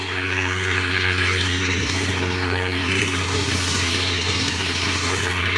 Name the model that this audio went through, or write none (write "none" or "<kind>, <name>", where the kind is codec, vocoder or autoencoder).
codec, SNAC